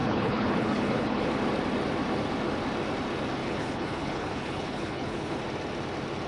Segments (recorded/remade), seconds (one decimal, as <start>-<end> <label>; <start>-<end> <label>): 0.0-1.3 remade; 1.3-3.4 recorded; 3.4-5.4 remade; 5.4-6.3 recorded